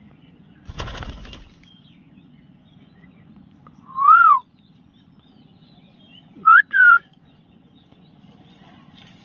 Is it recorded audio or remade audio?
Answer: remade